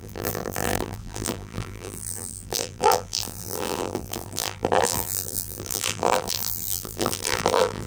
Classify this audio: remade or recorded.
remade